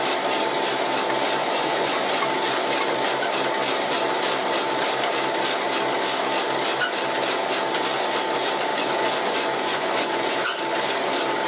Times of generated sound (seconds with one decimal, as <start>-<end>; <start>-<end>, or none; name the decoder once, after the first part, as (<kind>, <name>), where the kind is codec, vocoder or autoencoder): 1.4-2.2 (vocoder, Vocos); 8.7-10.6